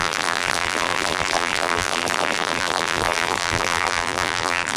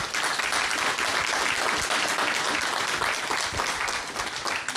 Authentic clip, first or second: second